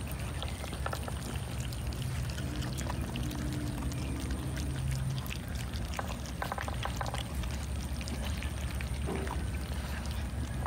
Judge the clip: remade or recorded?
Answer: recorded